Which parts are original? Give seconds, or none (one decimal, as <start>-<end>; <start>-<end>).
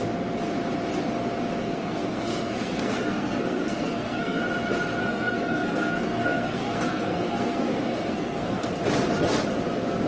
0.0-1.6; 4.4-5.0; 8.8-10.1